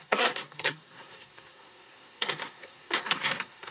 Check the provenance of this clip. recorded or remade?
remade